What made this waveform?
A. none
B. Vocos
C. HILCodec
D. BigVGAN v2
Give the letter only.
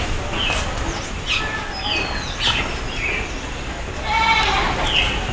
A